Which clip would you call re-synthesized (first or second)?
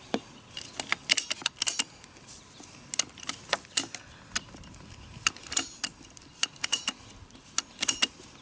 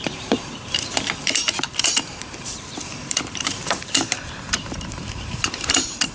second